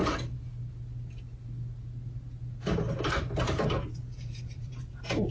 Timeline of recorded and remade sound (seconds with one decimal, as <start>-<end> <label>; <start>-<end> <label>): 0.0-2.9 recorded; 2.9-5.3 remade